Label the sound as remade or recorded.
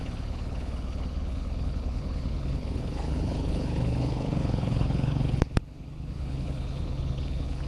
remade